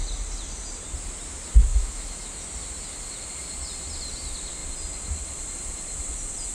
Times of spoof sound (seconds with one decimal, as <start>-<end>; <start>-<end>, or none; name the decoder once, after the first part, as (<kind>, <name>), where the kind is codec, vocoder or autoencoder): 1.7-2.5 (autoencoder, DAC-VAE)